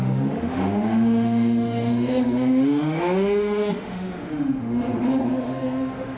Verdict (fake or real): fake